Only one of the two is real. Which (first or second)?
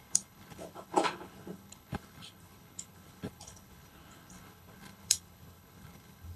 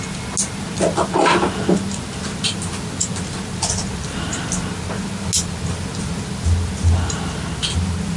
second